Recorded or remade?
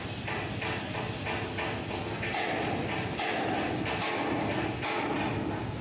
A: recorded